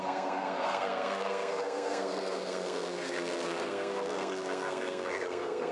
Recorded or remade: remade